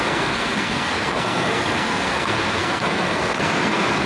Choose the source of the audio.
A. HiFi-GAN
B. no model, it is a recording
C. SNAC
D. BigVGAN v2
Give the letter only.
C